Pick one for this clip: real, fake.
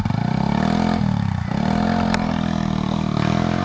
real